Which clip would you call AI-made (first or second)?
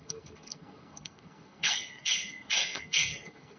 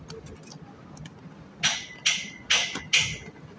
first